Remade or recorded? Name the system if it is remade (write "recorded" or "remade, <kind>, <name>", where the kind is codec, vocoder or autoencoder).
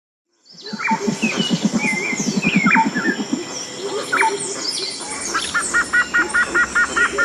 recorded